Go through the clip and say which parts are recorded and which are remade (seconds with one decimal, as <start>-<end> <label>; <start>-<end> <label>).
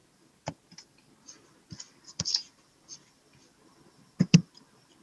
0.0-2.1 recorded; 2.1-4.5 remade; 4.5-5.0 recorded